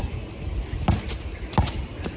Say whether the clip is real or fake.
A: real